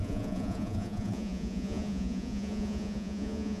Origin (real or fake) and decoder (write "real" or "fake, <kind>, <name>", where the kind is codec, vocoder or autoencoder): fake, vocoder, Vocos